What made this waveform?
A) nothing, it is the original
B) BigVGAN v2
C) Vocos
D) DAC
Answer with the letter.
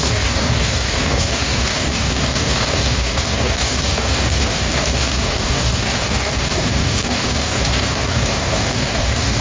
D